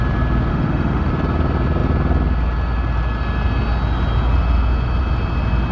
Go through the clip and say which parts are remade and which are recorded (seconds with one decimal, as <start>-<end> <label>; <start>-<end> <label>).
0.0-0.5 recorded; 0.5-1.1 remade; 1.1-5.7 recorded